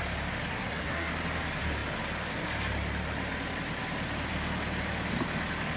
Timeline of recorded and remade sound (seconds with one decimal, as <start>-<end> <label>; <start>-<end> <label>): 0.0-0.5 recorded; 0.5-1.1 remade; 1.1-5.8 recorded